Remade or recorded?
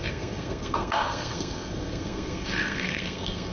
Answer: remade